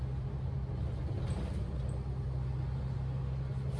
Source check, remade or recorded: recorded